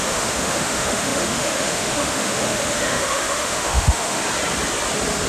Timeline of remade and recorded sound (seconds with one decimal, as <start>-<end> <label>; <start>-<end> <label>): 0.0-4.2 remade; 4.2-5.3 recorded